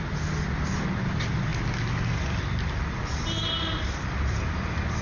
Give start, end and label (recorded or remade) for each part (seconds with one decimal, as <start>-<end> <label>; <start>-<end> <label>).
0.0-5.0 recorded